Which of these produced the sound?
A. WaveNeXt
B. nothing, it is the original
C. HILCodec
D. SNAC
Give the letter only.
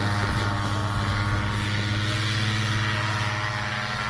B